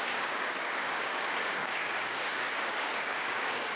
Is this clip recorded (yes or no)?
no